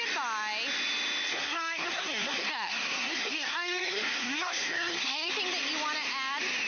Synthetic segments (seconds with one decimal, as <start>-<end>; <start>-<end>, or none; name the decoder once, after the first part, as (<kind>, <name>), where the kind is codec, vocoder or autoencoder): 1.3-5.3 (codec, SNAC)